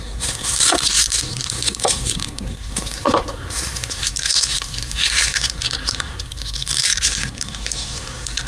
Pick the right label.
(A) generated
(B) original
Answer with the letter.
A